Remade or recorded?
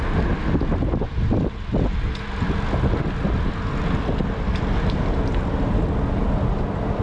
recorded